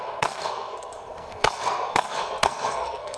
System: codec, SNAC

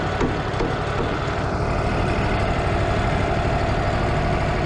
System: none